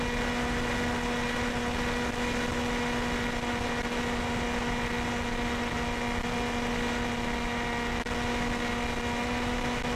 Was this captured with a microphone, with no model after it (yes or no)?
yes